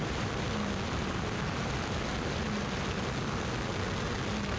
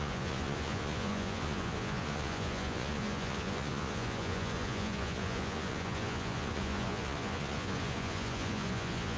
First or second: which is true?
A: first